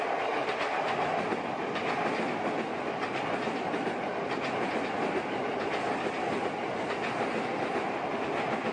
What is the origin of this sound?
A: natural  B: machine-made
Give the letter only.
A